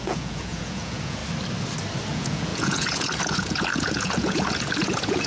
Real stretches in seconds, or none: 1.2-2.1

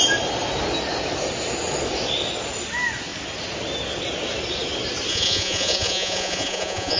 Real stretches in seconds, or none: 0.0-5.1

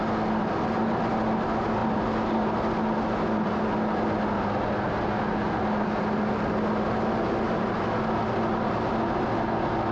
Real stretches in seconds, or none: 0.0-9.9

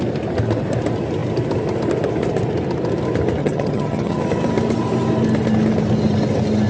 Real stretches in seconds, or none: 0.0-3.4; 4.2-6.7

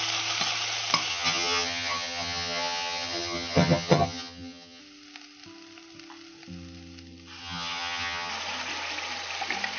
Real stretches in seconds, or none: 0.0-1.1; 4.8-7.4; 8.3-9.8

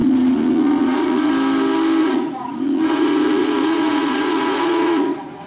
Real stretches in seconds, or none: 1.3-2.0

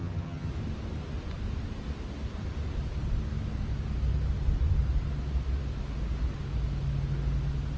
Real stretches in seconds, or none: 0.5-7.8